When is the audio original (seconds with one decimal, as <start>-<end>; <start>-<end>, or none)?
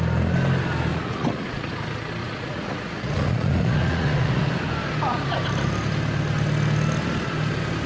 0.0-0.9; 1.7-2.2; 4.5-7.9